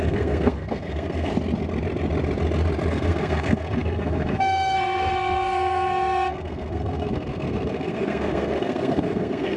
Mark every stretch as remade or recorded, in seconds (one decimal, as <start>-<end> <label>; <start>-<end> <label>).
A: 0.0-1.3 remade; 1.3-2.9 recorded; 2.9-9.6 remade

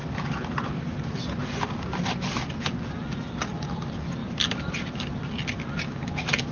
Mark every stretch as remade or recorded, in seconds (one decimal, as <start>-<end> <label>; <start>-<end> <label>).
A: 0.0-1.6 remade; 1.6-4.2 recorded; 4.2-5.3 remade; 5.3-6.5 recorded

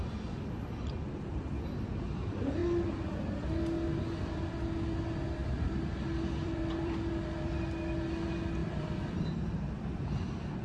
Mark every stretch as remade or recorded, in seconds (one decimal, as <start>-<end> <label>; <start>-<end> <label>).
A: 0.0-5.4 recorded; 5.4-7.1 remade; 7.1-8.6 recorded; 8.6-10.2 remade; 10.2-10.6 recorded

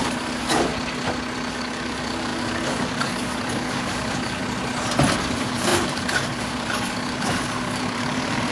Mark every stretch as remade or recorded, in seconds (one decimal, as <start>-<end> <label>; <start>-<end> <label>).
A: 0.0-0.7 remade; 0.7-1.5 recorded; 1.5-4.4 remade; 4.4-5.1 recorded; 5.1-8.5 remade

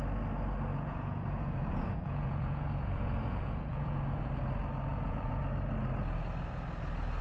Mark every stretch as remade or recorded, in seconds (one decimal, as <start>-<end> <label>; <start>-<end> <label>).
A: 0.0-0.7 recorded; 0.7-4.3 remade; 4.3-4.9 recorded; 4.9-5.4 remade; 5.4-7.2 recorded

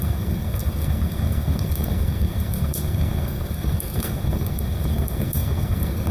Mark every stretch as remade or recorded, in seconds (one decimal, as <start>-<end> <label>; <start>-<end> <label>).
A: 0.0-6.1 remade